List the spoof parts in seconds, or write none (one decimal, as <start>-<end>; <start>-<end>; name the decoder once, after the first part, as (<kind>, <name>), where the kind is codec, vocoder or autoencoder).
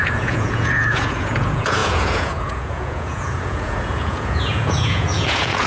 0.0-5.7 (vocoder, Vocos)